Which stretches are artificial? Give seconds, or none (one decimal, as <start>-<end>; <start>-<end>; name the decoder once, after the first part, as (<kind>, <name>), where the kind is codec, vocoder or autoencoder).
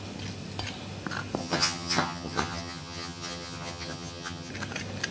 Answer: 1.4-4.5 (vocoder, HiFi-GAN)